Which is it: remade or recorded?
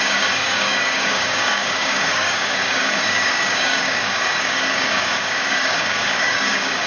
remade